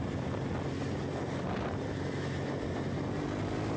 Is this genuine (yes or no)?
yes